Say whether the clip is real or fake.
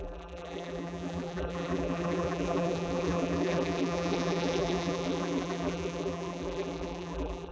fake